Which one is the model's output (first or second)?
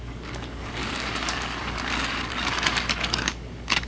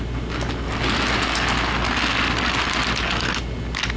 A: first